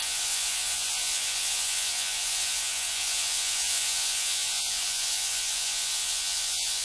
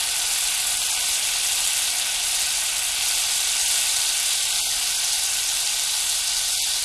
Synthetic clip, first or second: first